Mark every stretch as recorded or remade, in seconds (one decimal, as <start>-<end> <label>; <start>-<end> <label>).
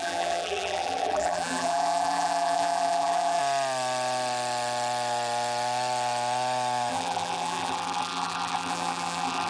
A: 0.0-3.4 remade; 3.4-6.9 recorded; 6.9-9.5 remade